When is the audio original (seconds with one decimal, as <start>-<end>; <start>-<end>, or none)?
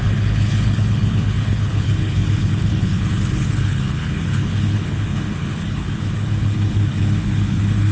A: none